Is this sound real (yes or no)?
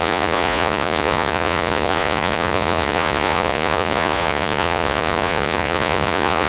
no